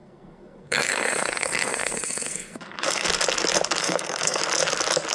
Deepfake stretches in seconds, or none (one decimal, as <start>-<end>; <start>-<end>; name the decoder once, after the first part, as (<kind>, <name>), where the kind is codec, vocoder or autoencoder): 0.0-3.1 (codec, SNAC); 3.8-4.4